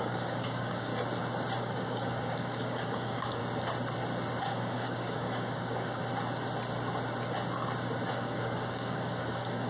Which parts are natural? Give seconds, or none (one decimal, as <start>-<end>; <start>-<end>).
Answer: 0.9-1.6; 3.4-4.4; 6.0-8.1